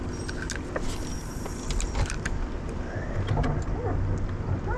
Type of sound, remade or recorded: recorded